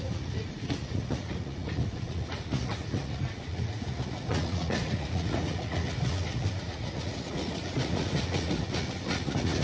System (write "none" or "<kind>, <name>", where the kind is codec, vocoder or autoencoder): vocoder, Vocos